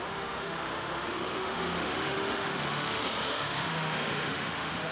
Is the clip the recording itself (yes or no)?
no